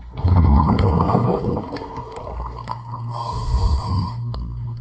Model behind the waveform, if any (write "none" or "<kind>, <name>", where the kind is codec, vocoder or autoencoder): codec, SNAC